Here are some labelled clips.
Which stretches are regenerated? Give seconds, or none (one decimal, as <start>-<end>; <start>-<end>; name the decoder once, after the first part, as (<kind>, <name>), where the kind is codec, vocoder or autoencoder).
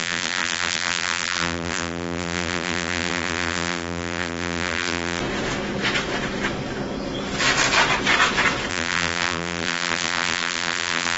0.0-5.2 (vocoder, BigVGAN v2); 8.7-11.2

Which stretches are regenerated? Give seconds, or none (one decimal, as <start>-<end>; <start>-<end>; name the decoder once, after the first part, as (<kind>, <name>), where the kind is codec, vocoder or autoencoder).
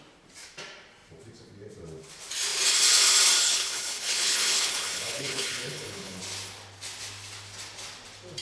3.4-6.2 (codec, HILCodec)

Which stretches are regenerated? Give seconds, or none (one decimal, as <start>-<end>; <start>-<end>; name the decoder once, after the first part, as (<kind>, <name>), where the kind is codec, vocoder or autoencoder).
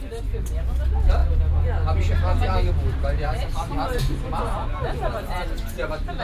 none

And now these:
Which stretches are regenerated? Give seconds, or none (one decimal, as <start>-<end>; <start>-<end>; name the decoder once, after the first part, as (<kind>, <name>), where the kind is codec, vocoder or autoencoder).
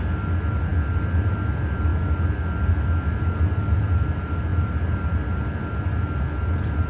none